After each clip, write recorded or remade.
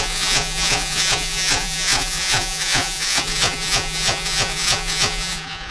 remade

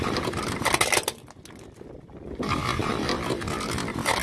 recorded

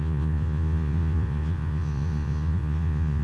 remade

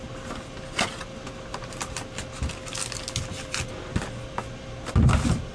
recorded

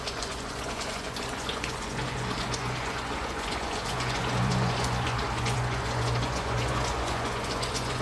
remade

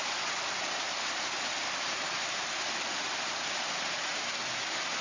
recorded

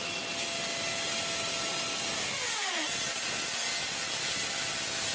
recorded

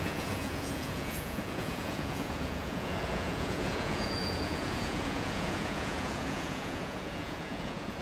remade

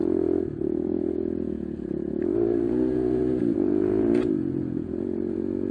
remade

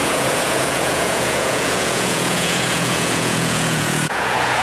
remade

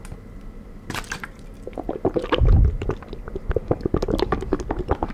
recorded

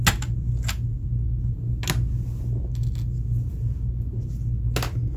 recorded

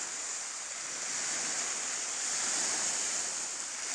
recorded